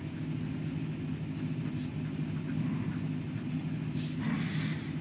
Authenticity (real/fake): real